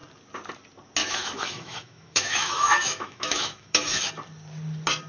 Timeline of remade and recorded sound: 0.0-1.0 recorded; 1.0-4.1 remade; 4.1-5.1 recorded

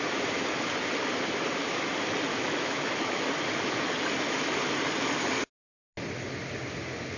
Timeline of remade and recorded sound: 0.0-2.3 recorded; 2.3-3.2 remade; 3.2-7.2 recorded

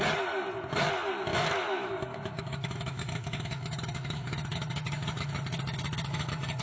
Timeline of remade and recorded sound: 0.0-1.3 recorded; 1.3-5.3 remade; 5.3-6.6 recorded

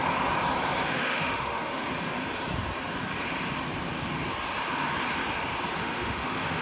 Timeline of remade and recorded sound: 0.0-0.9 recorded; 0.9-1.8 remade; 1.8-5.8 recorded; 5.8-6.6 remade